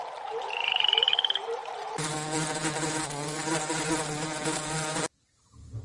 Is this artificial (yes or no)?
yes